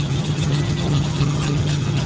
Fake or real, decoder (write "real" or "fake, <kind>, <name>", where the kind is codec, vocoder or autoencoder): fake, vocoder, HiFi-GAN